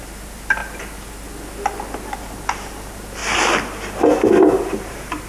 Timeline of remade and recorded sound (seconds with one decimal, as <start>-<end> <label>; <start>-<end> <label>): 0.0-0.6 remade; 0.6-2.3 recorded; 2.3-3.2 remade; 3.2-4.6 recorded; 4.6-5.3 remade

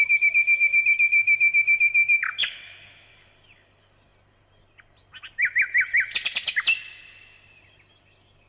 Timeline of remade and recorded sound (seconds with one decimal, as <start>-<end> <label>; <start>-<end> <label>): 0.0-1.2 recorded; 1.2-3.1 remade; 3.1-8.5 recorded

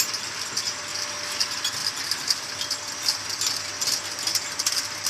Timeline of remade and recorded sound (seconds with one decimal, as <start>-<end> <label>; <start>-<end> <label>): 0.0-5.1 recorded

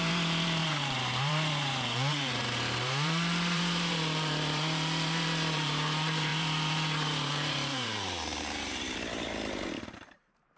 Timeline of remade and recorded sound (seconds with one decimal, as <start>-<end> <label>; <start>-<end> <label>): 0.0-10.6 remade

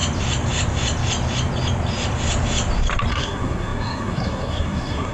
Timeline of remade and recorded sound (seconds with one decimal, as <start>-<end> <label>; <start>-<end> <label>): 0.0-3.1 recorded; 3.1-5.1 remade

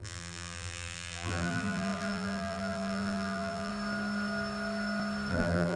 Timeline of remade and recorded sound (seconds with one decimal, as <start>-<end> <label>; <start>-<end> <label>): 0.0-3.7 remade; 3.7-5.3 recorded; 5.3-5.8 remade

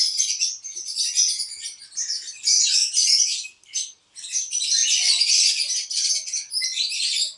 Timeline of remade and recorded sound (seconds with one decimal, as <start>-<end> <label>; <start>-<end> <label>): 0.0-7.4 recorded

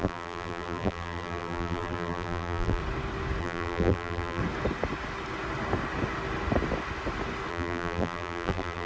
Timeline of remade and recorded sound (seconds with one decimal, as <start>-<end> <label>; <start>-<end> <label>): 0.0-2.8 remade; 2.8-3.4 recorded; 3.4-4.4 remade; 4.4-7.5 recorded; 7.5-8.9 remade